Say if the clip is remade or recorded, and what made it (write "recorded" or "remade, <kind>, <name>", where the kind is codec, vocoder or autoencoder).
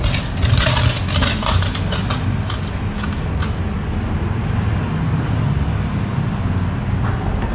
recorded